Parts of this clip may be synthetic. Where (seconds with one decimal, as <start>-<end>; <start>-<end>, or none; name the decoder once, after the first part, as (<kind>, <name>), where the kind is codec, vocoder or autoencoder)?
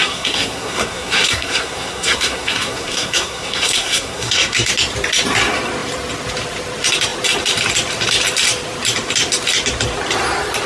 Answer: 0.0-4.7 (codec, SNAC)